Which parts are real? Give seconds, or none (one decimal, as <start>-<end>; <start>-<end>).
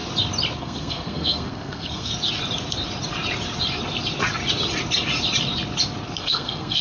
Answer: 0.0-0.6; 2.1-6.2